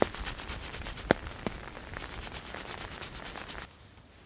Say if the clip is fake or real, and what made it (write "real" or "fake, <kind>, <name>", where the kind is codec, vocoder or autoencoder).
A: real